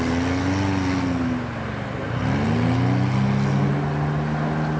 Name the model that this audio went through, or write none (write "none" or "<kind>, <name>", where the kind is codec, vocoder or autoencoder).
none